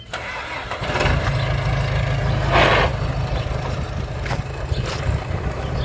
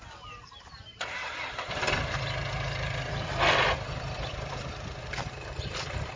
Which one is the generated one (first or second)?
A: second